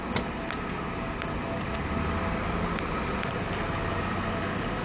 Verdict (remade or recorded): recorded